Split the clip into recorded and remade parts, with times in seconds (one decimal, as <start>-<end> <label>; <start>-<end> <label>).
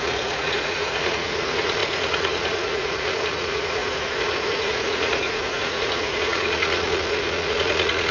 0.0-8.1 remade